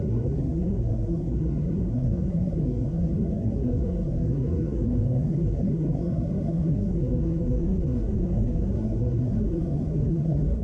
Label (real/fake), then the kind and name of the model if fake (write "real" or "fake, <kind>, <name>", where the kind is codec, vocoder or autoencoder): fake, codec, SNAC